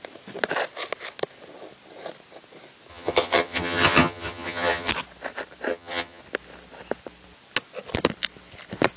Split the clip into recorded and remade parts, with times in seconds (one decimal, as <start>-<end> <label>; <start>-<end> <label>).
0.0-2.9 recorded; 2.9-4.9 remade; 4.9-5.7 recorded; 5.7-6.2 remade; 6.2-9.0 recorded